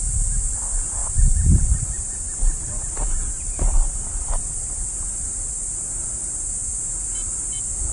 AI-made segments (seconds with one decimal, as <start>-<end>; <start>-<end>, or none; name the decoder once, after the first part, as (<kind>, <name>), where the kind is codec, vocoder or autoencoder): 1.0-4.3 (vocoder, BigVGAN v2); 5.1-6.7